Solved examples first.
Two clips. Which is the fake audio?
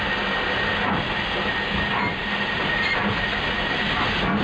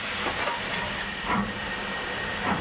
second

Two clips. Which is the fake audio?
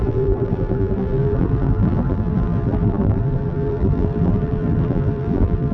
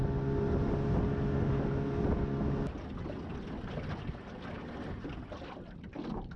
first